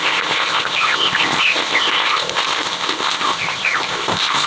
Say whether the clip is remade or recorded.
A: remade